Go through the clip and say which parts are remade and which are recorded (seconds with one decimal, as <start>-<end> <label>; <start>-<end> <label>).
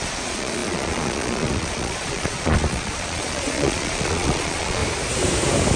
0.0-4.8 remade; 4.8-5.8 recorded